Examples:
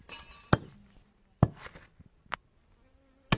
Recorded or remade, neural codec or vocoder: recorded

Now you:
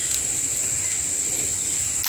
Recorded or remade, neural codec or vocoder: recorded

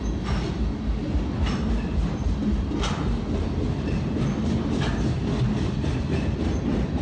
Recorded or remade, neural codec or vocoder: recorded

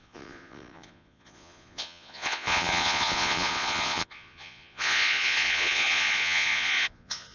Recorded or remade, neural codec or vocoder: remade, vocoder, Vocos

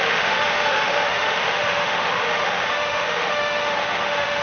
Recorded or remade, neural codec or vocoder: remade, autoencoder, DAC-VAE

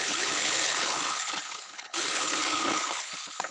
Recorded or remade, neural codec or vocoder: remade, codec, HILCodec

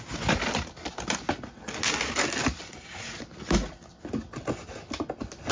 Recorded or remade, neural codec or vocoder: recorded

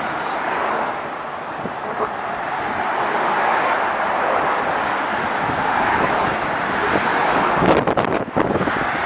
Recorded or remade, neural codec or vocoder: recorded